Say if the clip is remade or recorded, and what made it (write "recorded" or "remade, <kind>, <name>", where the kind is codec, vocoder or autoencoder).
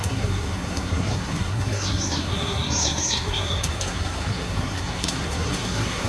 remade, codec, SNAC